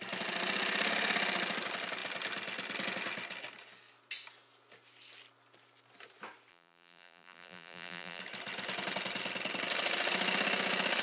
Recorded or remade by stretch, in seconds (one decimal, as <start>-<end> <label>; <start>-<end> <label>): 0.0-6.5 recorded; 6.5-8.2 remade; 8.2-11.0 recorded